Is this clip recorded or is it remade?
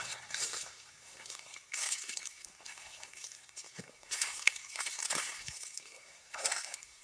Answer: remade